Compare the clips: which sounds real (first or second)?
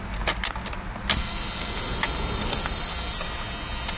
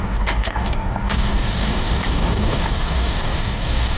first